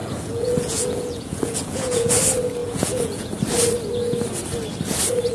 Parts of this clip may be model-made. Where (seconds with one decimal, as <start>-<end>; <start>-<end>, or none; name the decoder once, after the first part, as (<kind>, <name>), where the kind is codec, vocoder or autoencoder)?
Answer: 0.0-2.1 (vocoder, Vocos); 2.6-3.3